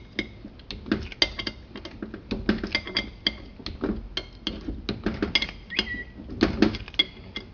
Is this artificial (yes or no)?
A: no